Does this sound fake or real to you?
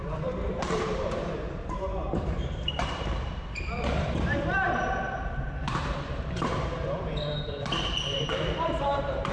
fake